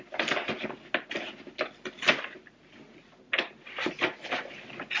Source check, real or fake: real